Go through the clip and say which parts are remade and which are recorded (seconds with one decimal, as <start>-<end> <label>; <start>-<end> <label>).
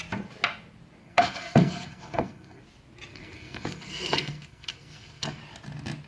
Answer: 0.0-1.0 recorded; 1.0-2.6 remade; 2.6-3.1 recorded; 3.1-5.4 remade; 5.4-6.1 recorded